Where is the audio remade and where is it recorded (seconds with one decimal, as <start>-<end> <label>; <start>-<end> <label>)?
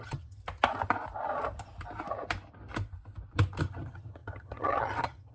0.0-0.4 remade; 0.4-3.6 recorded; 3.6-5.3 remade